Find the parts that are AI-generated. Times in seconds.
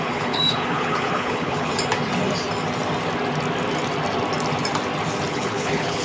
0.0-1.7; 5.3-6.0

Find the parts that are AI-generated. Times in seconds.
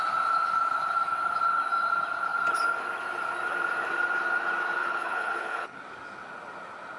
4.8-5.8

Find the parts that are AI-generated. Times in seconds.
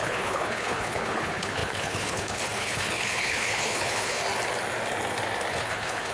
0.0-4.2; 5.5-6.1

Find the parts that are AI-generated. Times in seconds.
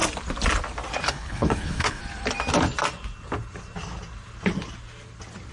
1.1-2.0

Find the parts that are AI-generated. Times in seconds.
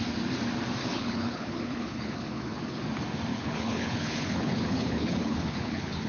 0.8-2.8; 3.3-6.1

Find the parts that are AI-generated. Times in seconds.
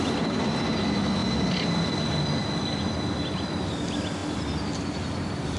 none